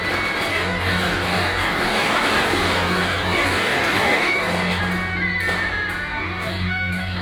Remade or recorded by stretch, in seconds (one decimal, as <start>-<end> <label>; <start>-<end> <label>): 0.0-0.5 recorded; 0.5-4.8 remade; 4.8-6.1 recorded; 6.1-7.2 remade